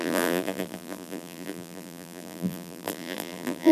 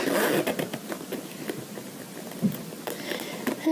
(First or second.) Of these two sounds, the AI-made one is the first